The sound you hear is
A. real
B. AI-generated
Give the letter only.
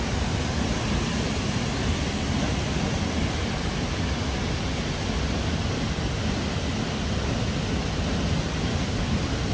A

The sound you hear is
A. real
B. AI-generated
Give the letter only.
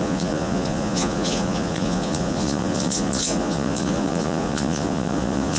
B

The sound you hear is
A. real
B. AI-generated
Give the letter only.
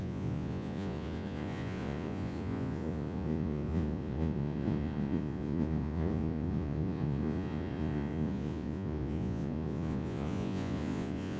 B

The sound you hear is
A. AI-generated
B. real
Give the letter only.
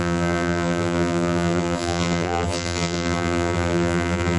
A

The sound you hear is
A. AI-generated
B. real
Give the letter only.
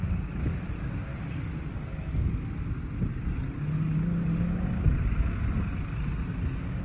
B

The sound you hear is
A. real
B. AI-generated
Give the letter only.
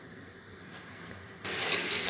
B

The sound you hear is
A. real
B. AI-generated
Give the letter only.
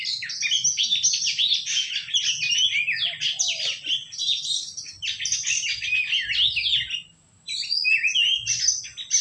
A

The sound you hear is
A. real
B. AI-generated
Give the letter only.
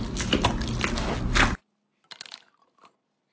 A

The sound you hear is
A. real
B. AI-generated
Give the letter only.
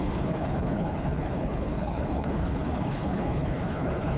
B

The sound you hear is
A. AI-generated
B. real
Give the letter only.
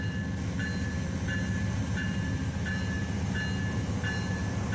B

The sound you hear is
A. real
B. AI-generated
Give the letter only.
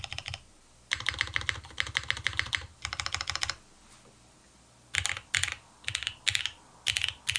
A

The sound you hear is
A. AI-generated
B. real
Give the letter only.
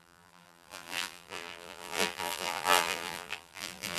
A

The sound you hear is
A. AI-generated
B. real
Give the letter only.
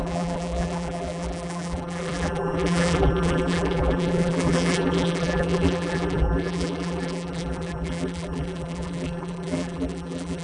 A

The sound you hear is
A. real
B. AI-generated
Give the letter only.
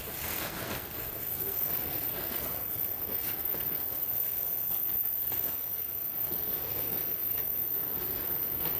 B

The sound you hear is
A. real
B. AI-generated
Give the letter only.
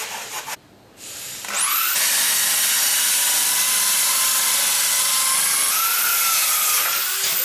A